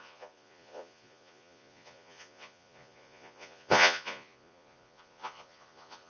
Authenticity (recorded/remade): remade